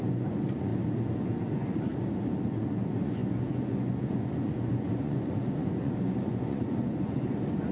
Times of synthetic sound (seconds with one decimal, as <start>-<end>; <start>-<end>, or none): 0.0-0.7; 1.2-1.9; 2.5-7.7